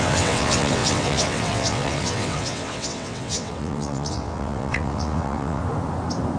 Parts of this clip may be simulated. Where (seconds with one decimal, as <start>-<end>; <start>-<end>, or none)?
0.0-5.6